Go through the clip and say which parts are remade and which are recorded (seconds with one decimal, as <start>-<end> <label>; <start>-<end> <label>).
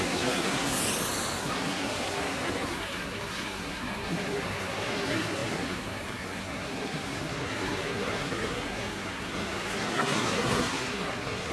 0.0-0.8 remade; 0.8-1.4 recorded; 1.4-11.5 remade